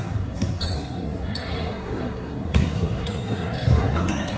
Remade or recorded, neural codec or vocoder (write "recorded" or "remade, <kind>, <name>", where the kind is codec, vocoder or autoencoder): remade, codec, SNAC